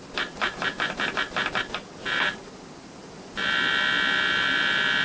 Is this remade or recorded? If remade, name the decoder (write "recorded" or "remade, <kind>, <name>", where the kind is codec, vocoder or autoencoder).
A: recorded